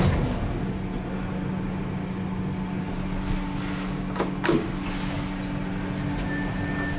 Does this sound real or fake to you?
real